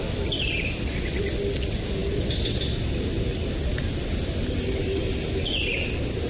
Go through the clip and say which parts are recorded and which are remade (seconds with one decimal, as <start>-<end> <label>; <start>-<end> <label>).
0.0-6.3 recorded